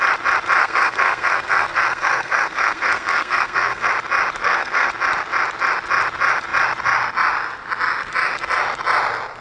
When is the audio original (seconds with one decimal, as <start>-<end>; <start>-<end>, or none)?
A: 0.0-0.6; 3.9-4.4; 4.9-9.4